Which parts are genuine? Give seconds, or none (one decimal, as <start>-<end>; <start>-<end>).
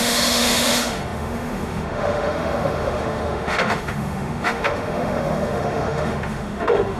none